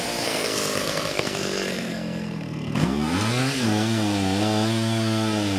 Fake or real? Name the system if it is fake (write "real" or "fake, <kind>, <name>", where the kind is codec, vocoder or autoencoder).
fake, codec, SNAC